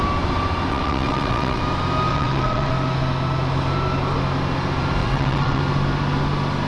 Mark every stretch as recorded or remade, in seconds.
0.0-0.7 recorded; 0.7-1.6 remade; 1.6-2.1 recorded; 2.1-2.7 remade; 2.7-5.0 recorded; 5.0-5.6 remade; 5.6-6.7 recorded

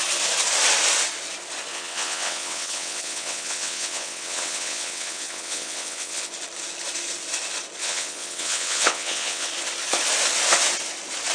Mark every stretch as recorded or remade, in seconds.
0.0-1.7 recorded; 1.7-6.3 remade; 6.3-7.8 recorded; 7.8-9.5 remade; 9.5-11.3 recorded

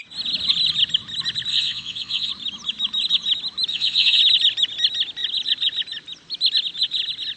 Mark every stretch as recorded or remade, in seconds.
0.0-1.5 recorded; 1.5-2.3 remade; 2.3-3.7 recorded; 3.7-4.2 remade; 4.2-7.4 recorded

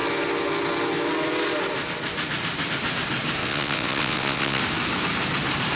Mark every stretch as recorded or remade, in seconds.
0.0-3.4 recorded; 3.4-4.6 remade; 4.6-5.8 recorded

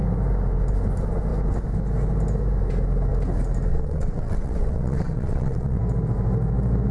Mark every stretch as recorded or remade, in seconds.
0.0-3.7 recorded; 3.7-5.8 remade; 5.8-6.9 recorded

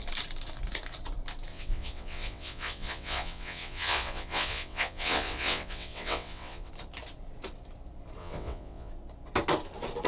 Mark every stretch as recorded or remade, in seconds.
0.0-1.5 recorded; 1.5-6.7 remade; 6.7-8.2 recorded; 8.2-8.9 remade; 8.9-10.1 recorded